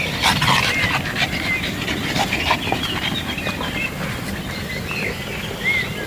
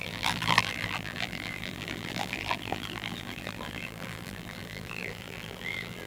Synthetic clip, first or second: second